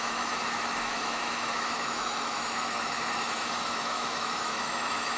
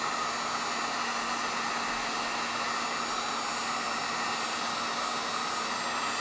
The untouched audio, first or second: second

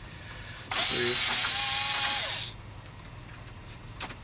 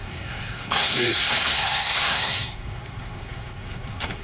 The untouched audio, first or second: first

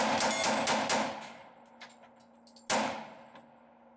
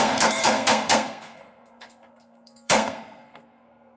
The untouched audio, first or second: first